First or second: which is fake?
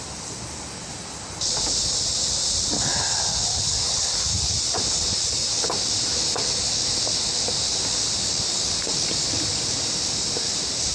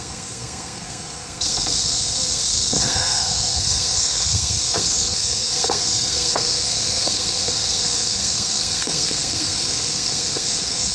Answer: second